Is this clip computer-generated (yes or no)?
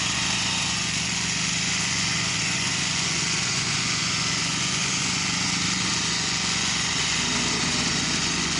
yes